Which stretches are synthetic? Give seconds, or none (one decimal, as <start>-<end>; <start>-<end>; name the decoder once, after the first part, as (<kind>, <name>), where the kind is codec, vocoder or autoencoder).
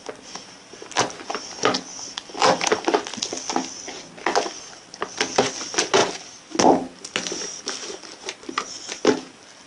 none